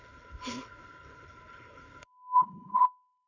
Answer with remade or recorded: remade